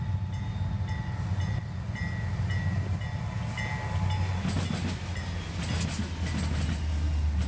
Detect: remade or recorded recorded